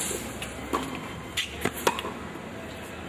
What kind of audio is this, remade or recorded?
recorded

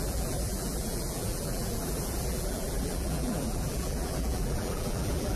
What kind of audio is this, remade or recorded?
remade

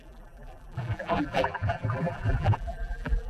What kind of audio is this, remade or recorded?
remade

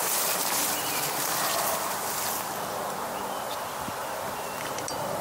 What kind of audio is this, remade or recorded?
recorded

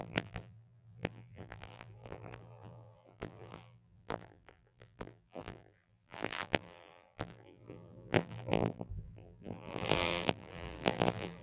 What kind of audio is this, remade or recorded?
remade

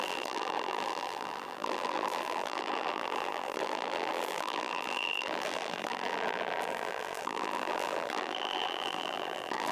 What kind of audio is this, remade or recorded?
remade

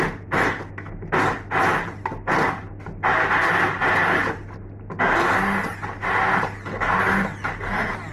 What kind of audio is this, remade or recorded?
recorded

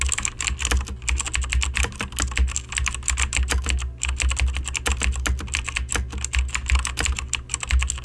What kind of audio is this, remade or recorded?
recorded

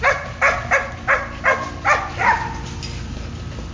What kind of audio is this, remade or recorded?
recorded